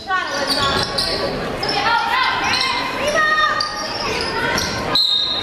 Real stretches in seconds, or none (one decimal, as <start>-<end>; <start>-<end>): 0.0-3.7; 4.8-5.4